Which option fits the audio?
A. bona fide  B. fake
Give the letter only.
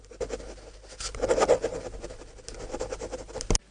A